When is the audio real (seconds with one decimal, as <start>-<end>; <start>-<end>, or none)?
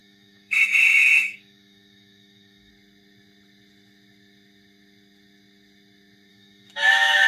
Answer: 2.7-6.3